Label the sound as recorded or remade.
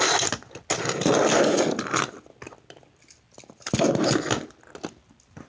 recorded